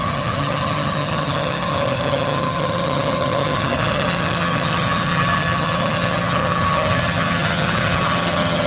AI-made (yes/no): yes